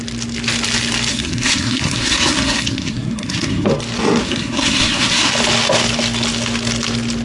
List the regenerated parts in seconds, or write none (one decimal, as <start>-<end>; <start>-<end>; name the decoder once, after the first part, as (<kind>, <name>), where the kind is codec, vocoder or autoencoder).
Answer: 1.1-3.7 (codec, SNAC); 4.2-5.3